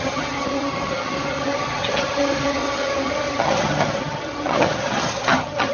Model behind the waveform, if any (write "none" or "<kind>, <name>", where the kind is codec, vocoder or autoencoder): vocoder, HiFi-GAN